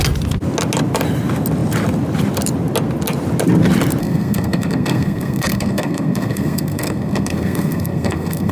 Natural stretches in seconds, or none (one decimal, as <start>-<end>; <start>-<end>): 0.0-4.0